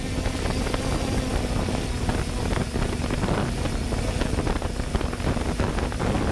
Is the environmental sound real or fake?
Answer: real